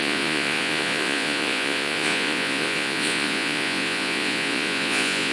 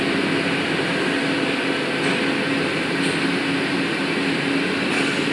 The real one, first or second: second